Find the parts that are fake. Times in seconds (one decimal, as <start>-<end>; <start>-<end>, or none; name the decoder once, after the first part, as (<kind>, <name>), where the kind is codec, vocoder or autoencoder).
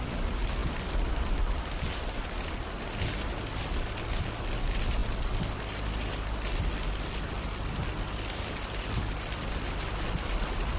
none